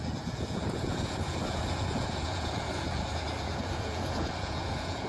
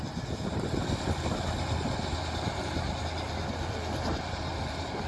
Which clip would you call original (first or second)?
second